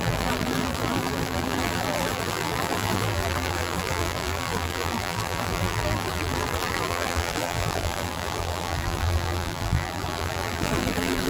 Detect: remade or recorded remade